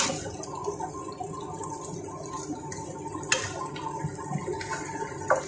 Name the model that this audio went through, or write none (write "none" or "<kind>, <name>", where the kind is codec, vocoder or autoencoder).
none